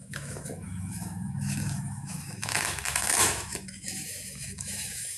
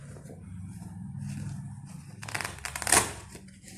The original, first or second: second